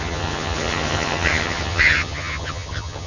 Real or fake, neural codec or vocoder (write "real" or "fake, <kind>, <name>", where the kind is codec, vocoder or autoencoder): fake, vocoder, HiFi-GAN